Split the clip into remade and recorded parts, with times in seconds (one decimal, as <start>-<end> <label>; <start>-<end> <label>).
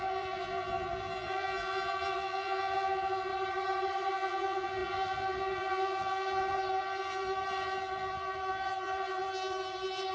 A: 0.0-3.3 remade; 3.3-4.1 recorded; 4.1-10.1 remade